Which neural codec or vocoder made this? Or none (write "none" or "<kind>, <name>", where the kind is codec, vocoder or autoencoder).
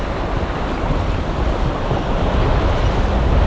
none